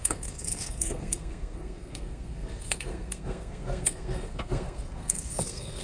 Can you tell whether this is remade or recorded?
remade